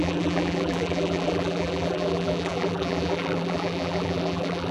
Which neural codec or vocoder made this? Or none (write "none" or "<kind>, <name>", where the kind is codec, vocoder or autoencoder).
vocoder, BigVGAN v2